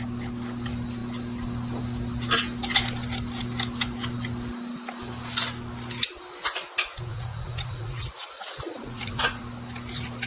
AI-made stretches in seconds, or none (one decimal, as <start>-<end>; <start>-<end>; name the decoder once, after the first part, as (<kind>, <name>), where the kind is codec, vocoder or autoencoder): 7.1-9.4 (vocoder, Vocos)